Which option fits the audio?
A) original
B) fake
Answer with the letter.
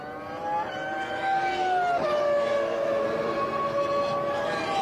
A